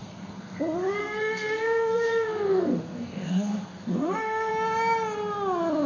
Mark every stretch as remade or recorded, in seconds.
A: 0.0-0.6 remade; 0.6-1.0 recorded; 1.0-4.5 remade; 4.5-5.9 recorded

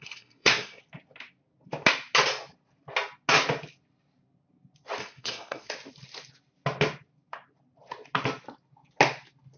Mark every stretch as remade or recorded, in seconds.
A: 0.0-0.8 remade; 0.8-5.0 recorded; 5.0-5.7 remade; 5.7-9.6 recorded